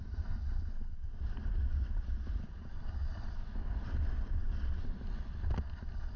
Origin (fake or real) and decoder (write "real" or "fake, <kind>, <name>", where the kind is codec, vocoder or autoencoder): real